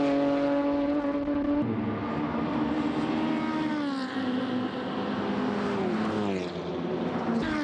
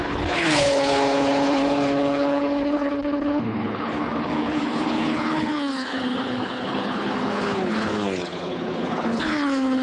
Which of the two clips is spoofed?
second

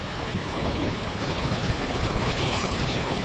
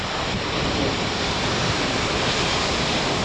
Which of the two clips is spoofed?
first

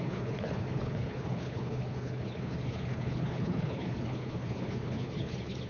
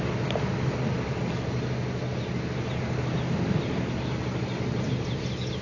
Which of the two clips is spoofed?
first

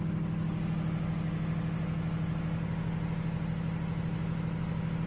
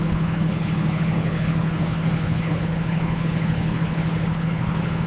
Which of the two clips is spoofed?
second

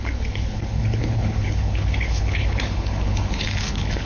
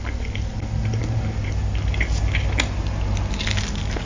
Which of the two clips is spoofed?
first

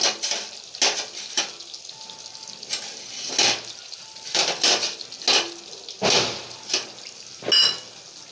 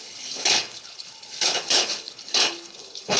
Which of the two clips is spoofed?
second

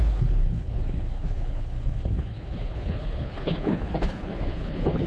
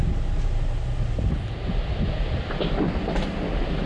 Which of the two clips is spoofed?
first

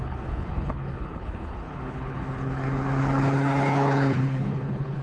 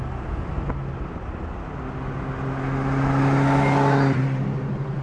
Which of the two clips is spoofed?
first